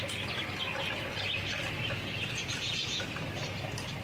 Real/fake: real